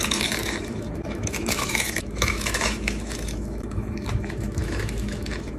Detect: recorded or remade remade